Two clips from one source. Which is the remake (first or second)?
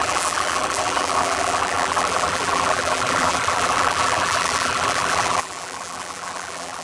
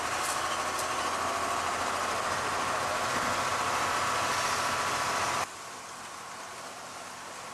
first